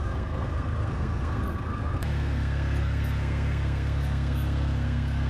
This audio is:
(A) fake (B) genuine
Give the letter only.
A